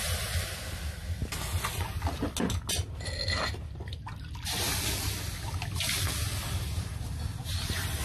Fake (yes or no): no